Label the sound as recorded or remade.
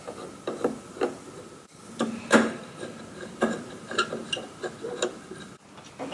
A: recorded